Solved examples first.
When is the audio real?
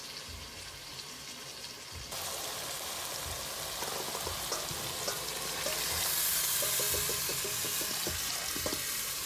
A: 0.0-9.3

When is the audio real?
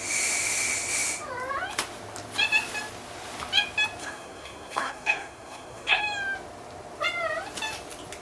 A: 0.0-4.0; 6.0-8.2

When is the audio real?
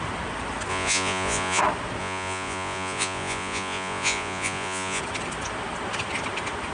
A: 0.0-0.7; 1.6-2.0; 5.0-6.7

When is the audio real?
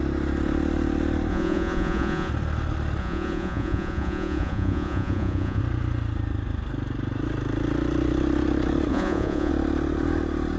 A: 0.0-1.3; 2.3-3.0; 5.6-8.9; 9.5-10.6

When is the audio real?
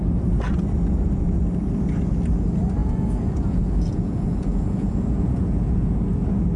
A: 0.0-2.8; 6.0-6.6